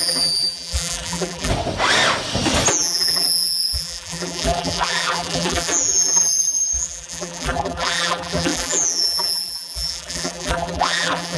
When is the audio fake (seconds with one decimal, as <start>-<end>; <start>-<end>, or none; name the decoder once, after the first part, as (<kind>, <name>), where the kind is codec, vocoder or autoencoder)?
0.0-1.5 (vocoder, BigVGAN v2); 2.7-11.4